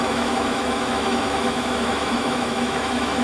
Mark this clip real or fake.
fake